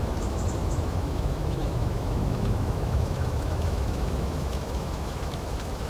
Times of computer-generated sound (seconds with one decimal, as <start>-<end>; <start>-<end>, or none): 0.0-5.9